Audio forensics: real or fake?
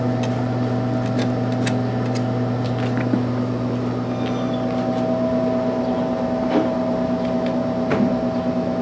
real